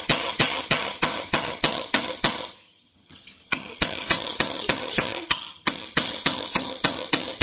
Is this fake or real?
fake